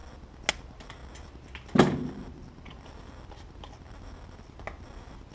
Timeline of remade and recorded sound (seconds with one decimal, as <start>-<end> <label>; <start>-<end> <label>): 0.0-5.3 recorded